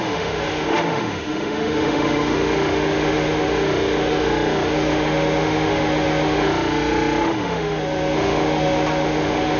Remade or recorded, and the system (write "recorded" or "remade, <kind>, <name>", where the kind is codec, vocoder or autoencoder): remade, autoencoder, DAC-VAE